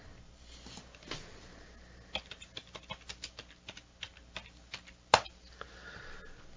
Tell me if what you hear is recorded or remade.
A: recorded